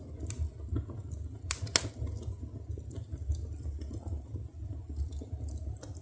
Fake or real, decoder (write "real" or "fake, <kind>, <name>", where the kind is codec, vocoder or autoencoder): real